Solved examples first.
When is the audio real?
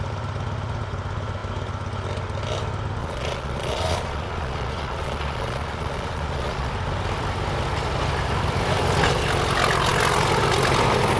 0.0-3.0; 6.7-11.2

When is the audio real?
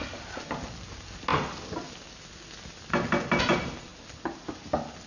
0.0-5.1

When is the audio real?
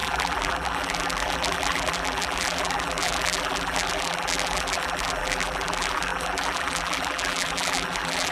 none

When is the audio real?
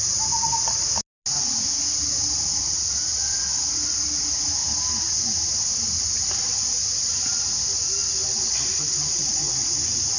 0.0-8.7; 9.3-10.2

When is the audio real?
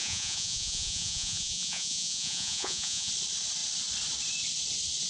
3.1-5.1